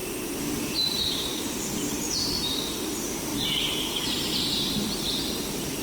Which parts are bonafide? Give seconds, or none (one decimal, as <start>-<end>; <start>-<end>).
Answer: 0.0-0.6